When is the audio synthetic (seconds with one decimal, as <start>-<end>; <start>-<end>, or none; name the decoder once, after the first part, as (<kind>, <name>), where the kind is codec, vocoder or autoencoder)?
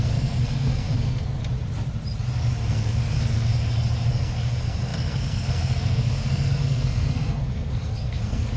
0.0-1.4 (codec, SNAC); 2.7-3.5; 4.1-8.6